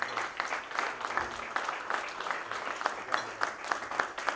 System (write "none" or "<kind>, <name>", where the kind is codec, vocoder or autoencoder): none